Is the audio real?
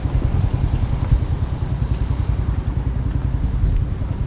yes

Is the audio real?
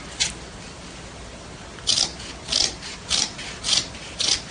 yes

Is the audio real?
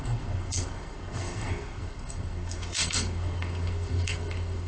no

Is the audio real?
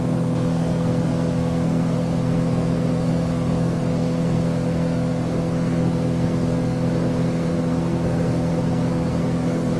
no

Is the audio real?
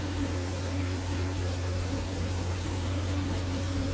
no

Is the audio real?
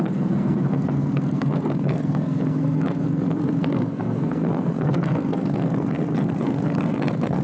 no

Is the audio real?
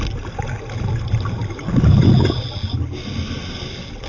yes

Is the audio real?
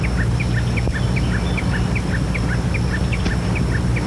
yes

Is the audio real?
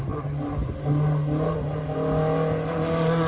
yes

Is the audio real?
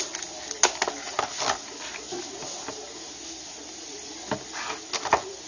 yes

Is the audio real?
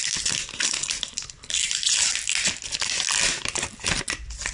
yes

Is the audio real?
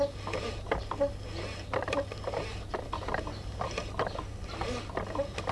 yes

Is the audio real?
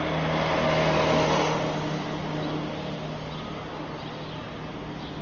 yes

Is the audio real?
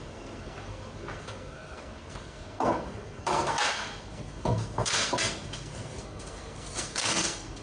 no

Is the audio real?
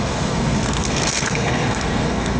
no